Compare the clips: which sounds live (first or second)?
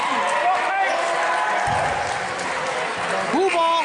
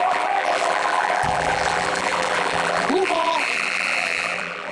first